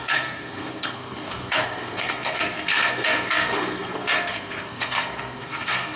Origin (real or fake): fake